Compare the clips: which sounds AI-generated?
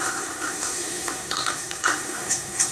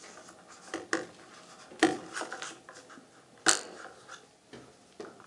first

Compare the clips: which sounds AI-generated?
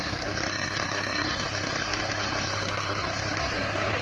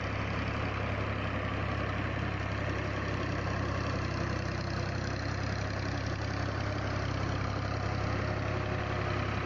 first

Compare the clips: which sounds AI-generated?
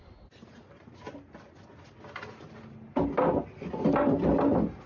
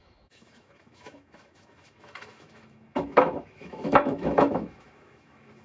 second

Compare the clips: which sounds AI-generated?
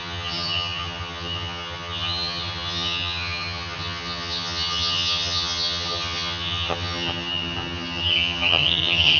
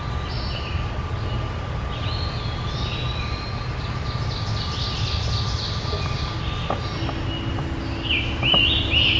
first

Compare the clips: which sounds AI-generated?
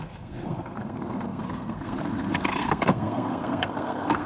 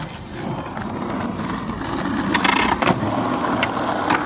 first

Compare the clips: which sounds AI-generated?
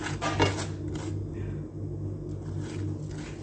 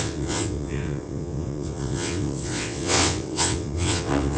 second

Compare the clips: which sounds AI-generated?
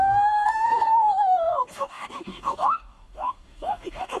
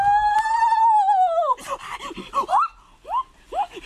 first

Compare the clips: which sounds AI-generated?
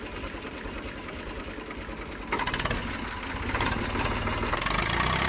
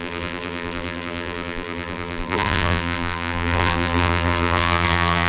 second